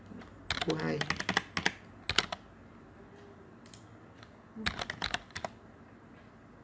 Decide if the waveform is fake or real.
real